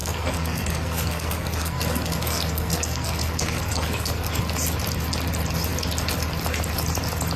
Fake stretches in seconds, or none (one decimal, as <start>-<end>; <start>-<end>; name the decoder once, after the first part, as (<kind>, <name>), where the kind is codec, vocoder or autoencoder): 0.0-4.4 (codec, SNAC)